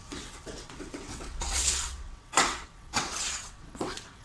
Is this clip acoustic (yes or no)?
no